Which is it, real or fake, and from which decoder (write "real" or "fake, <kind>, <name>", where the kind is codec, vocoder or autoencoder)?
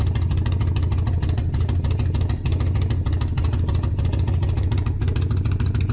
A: real